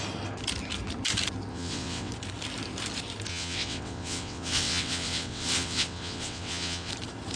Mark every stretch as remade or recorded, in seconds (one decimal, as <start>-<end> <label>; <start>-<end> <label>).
0.0-1.5 recorded; 1.5-2.1 remade; 2.1-3.3 recorded; 3.3-6.9 remade; 6.9-7.4 recorded